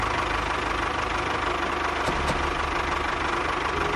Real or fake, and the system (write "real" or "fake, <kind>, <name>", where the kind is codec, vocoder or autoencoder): real